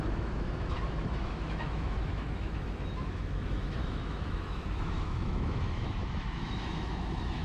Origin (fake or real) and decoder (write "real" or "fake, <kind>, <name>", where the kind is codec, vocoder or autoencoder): fake, autoencoder, DAC-VAE